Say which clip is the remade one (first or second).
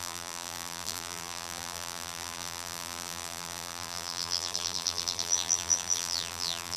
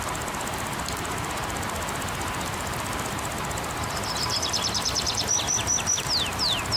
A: first